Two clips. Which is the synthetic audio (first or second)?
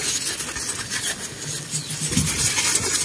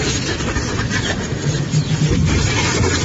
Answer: second